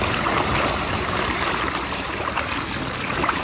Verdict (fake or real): real